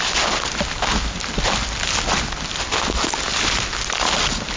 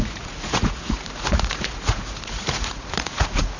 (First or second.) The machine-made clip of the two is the second